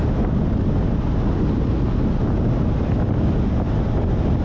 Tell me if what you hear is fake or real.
real